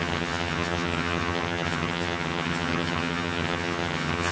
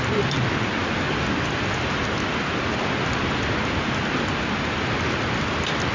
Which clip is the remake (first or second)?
first